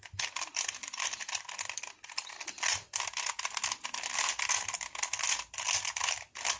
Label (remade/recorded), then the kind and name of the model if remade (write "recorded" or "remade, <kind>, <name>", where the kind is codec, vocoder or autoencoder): recorded